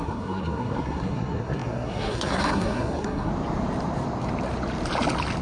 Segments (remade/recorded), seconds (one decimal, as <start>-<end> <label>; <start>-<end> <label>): 0.0-3.3 remade; 3.3-5.4 recorded